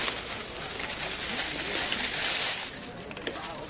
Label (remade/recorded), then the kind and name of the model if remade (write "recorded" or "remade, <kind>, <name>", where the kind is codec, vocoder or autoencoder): recorded